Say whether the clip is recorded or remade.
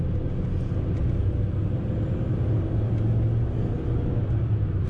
recorded